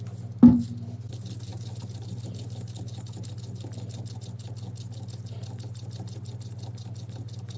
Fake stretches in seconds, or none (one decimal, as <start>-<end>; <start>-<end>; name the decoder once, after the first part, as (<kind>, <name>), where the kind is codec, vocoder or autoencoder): none